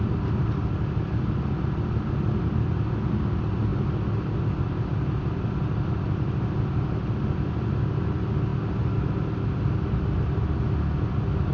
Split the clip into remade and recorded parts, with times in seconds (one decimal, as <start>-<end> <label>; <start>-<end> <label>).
0.0-11.5 recorded